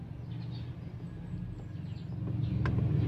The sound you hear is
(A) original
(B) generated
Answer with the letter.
A